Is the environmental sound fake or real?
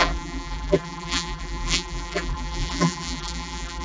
fake